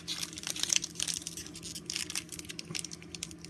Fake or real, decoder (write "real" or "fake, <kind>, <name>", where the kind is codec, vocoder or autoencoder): real